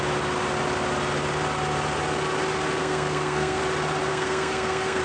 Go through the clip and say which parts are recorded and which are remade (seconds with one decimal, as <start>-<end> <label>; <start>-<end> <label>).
0.0-2.8 recorded; 2.8-3.6 remade; 3.6-4.1 recorded; 4.1-5.0 remade